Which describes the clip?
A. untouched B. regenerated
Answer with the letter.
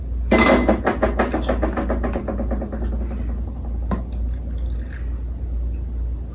A